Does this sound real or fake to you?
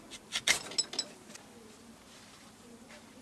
real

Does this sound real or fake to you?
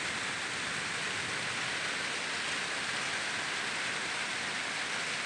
real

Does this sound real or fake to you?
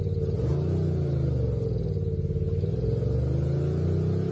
real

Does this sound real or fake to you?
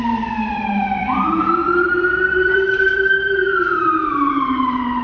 fake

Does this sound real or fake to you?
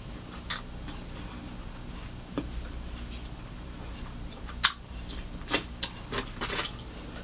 real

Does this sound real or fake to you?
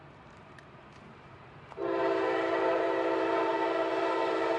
fake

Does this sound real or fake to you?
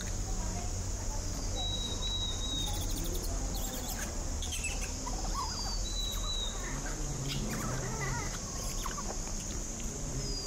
real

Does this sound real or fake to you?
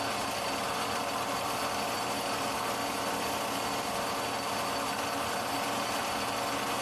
real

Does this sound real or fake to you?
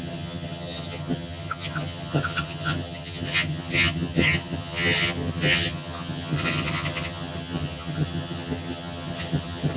fake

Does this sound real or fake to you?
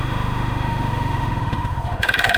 fake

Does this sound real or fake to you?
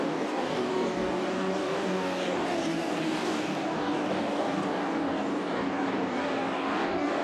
fake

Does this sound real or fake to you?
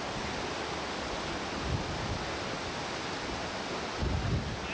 real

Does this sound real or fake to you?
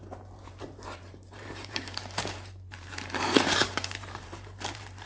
fake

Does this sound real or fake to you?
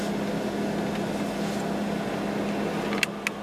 real